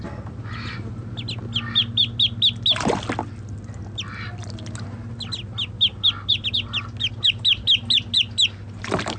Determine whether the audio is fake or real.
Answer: real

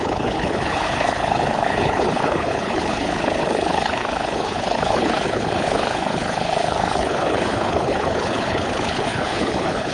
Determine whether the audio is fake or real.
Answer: fake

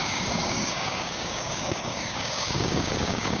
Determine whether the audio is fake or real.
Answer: fake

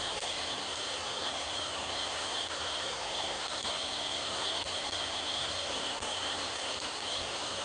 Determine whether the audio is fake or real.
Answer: fake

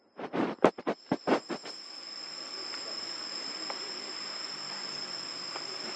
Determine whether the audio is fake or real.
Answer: real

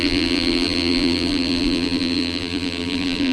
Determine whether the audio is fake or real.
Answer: fake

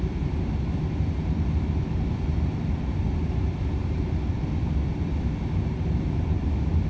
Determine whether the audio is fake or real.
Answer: real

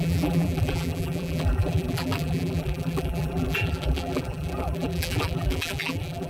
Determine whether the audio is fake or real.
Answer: fake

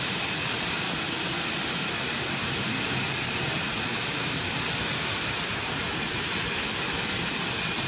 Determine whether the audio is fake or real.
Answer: fake